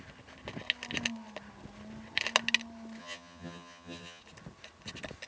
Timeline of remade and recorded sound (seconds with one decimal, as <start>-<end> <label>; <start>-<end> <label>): 0.0-3.0 recorded; 3.0-4.2 remade; 4.2-5.3 recorded